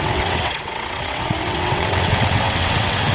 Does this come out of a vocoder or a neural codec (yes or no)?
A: yes